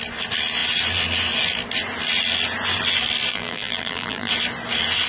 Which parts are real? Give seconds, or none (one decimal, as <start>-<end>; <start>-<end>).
0.0-3.3; 4.3-5.1